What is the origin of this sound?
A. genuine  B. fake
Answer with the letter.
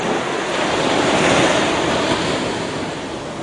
A